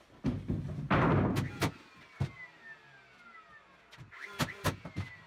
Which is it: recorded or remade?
recorded